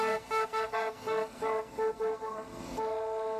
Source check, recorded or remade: remade